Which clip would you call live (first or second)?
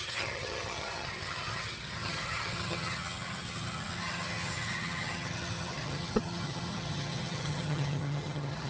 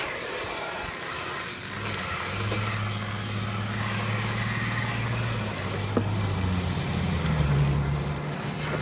second